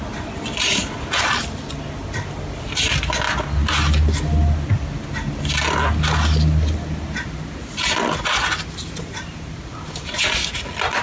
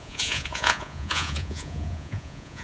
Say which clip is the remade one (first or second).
second